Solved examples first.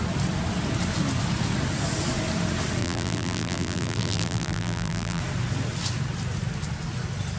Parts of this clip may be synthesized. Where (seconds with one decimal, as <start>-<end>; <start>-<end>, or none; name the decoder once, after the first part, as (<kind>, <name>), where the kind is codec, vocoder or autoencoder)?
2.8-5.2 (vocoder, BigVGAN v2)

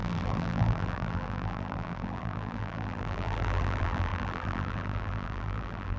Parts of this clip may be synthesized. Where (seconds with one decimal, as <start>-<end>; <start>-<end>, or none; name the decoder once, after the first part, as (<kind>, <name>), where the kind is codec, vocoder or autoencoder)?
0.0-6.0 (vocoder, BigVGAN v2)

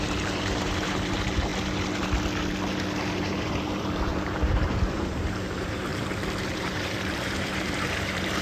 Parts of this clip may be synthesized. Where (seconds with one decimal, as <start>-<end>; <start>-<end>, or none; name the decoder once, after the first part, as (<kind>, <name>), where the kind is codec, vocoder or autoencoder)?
0.0-1.5 (vocoder, BigVGAN v2); 3.1-5.9; 6.4-8.4

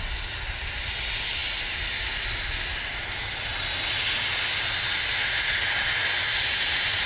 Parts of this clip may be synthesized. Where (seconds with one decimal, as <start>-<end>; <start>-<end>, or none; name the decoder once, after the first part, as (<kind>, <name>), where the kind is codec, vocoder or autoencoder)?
none